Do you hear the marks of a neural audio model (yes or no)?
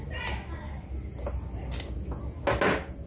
no